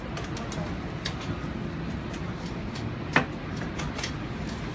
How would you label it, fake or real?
real